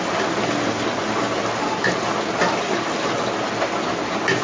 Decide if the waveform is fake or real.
real